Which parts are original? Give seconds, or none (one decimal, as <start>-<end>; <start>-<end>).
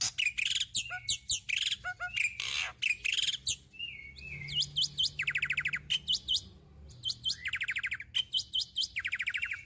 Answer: 0.0-9.6